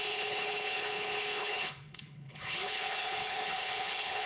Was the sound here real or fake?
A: fake